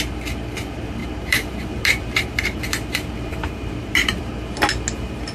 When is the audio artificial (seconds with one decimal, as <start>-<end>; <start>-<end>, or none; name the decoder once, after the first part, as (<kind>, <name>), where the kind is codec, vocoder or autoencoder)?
1.0-4.2 (vocoder, BigVGAN v2)